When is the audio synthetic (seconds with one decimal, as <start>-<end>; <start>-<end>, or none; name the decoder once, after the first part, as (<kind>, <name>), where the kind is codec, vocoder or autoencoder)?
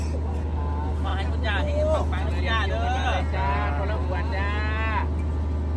none